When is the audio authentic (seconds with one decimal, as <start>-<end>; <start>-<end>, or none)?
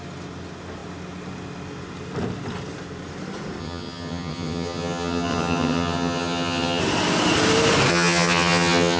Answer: 0.0-3.6; 6.8-7.9